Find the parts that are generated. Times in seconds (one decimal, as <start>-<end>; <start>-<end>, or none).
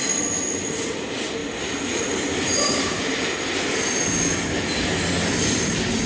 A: 1.4-4.0